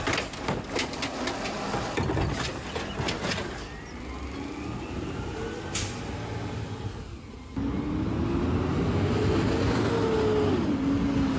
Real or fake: real